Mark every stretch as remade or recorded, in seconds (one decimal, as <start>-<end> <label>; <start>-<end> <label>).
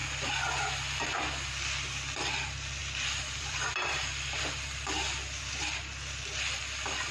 0.0-2.8 recorded; 2.8-5.4 remade; 5.4-7.1 recorded